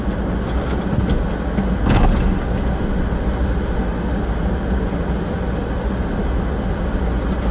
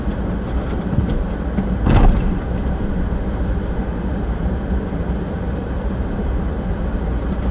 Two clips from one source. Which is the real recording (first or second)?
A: first